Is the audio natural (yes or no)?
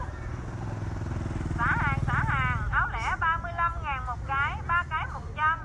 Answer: yes